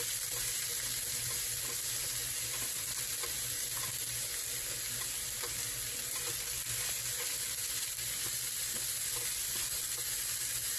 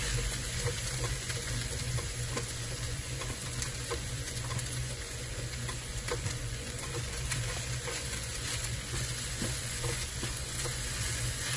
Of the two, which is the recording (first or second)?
first